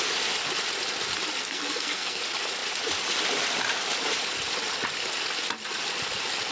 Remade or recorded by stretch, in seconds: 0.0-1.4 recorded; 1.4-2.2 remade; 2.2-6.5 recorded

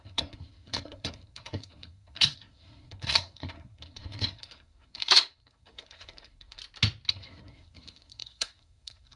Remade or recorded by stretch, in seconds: 0.0-6.6 remade; 6.6-7.1 recorded; 7.1-9.2 remade